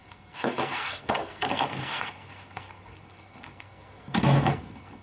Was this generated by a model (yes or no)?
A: yes